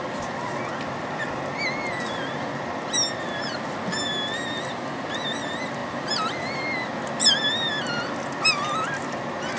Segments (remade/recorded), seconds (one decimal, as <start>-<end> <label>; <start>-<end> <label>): 0.0-9.6 recorded